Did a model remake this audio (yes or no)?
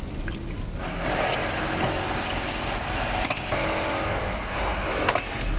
no